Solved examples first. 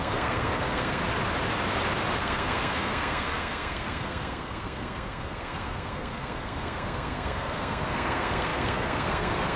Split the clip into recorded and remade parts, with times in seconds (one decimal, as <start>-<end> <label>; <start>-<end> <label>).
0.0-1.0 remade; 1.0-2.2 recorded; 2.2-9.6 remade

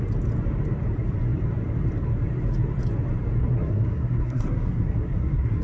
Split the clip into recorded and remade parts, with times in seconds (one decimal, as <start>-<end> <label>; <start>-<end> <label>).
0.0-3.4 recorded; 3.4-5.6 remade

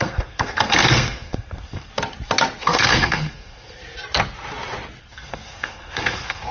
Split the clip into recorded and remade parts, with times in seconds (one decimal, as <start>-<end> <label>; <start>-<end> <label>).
0.0-1.9 remade; 1.9-2.6 recorded; 2.6-3.8 remade; 3.8-5.0 recorded; 5.0-6.5 remade